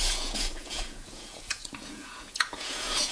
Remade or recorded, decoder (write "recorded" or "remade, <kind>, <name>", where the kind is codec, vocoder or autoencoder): remade, vocoder, Vocos